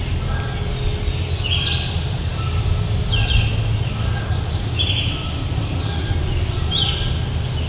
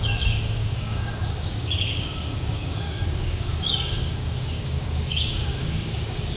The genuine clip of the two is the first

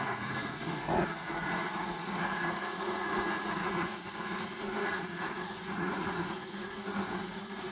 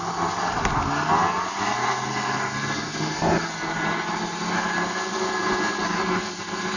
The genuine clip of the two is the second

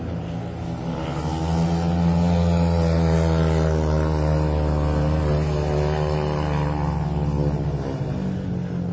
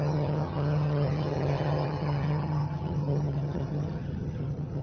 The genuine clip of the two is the first